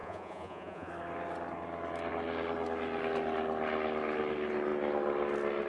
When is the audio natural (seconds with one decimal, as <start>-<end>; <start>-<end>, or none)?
0.9-5.7